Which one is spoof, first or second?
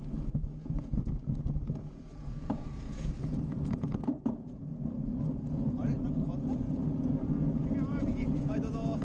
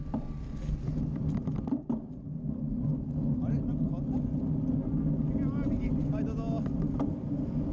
first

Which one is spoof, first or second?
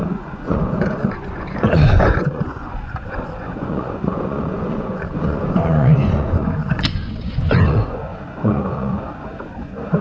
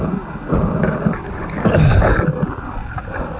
first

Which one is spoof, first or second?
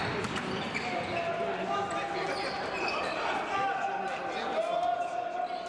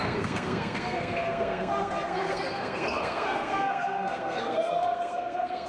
second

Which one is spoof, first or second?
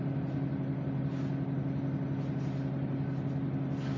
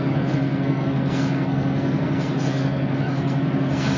second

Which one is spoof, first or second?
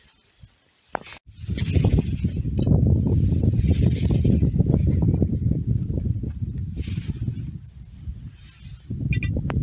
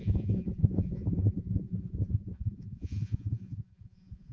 second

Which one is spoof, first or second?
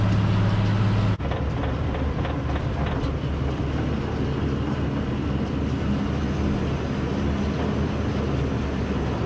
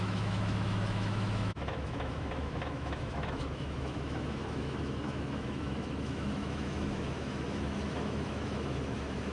second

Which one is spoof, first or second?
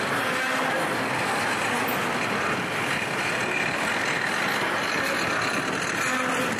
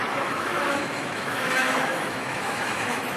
second